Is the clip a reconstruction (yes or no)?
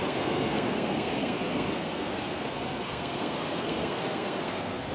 yes